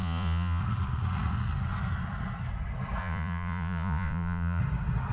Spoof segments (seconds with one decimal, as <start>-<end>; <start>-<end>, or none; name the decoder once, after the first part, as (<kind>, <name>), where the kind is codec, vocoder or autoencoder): 0.0-0.6 (vocoder, Vocos); 3.0-4.6